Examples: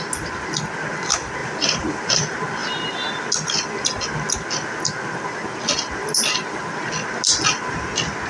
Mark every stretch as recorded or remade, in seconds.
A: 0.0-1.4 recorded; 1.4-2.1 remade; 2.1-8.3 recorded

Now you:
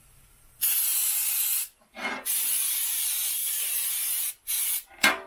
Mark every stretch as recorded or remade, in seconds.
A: 0.0-3.4 recorded; 3.4-4.3 remade; 4.3-5.3 recorded

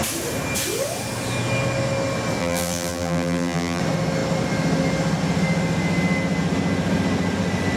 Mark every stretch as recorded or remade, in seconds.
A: 0.0-2.4 recorded; 2.4-3.8 remade; 3.8-7.8 recorded